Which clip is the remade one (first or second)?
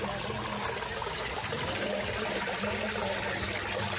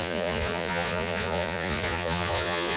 second